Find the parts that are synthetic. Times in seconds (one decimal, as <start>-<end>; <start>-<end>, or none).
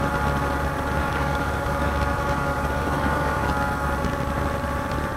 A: 1.0-3.5